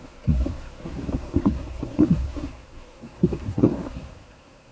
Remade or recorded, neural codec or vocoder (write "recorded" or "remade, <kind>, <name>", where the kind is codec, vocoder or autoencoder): remade, codec, SNAC